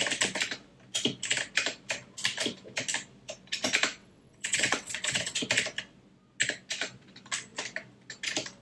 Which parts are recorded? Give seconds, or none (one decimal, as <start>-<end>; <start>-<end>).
0.0-4.0; 5.4-8.6